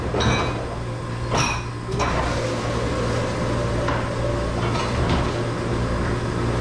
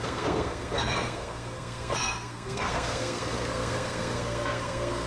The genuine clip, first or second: first